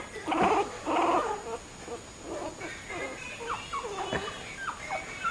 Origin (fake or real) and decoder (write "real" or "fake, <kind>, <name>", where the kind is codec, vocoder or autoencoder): real